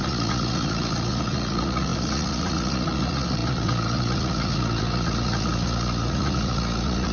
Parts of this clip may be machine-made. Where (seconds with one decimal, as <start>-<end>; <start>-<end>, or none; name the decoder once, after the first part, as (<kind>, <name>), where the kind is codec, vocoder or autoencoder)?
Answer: 0.0-7.1 (vocoder, Vocos)